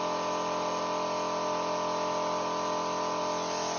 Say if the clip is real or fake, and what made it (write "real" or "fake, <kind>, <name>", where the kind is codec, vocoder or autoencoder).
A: real